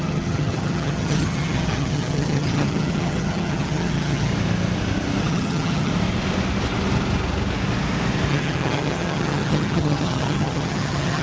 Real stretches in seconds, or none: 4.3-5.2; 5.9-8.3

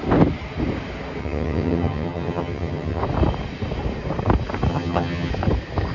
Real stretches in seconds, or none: 0.0-1.2; 3.0-4.7; 5.3-5.9

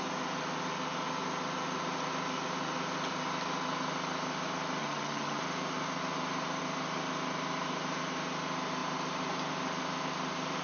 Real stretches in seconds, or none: 0.0-4.8; 5.4-10.6